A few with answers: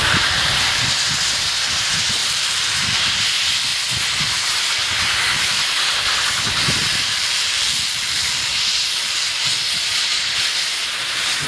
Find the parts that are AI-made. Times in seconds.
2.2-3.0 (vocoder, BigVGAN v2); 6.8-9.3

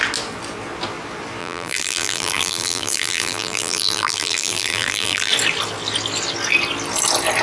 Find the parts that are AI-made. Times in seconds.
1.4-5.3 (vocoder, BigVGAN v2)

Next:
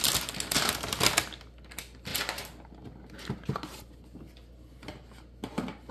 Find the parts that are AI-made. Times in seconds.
none

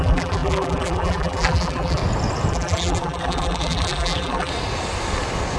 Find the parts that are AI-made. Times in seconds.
0.0-2.0 (vocoder, BigVGAN v2); 2.5-4.5

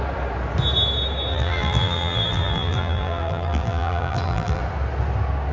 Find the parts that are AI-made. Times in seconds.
1.3-4.6 (vocoder, BigVGAN v2)